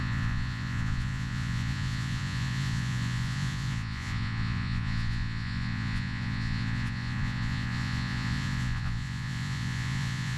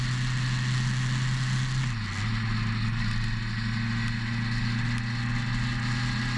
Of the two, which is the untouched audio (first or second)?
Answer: second